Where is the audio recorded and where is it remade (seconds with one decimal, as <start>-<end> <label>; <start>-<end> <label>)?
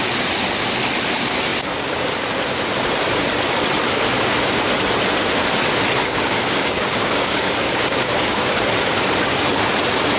0.0-6.0 recorded; 6.0-8.6 remade; 8.6-10.2 recorded